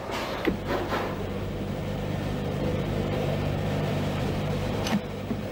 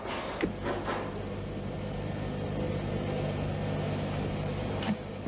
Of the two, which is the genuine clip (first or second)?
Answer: second